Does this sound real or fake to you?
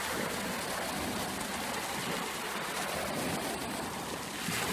real